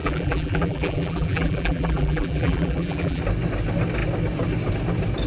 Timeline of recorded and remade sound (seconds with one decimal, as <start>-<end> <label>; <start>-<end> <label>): 0.0-3.2 remade; 3.2-5.3 recorded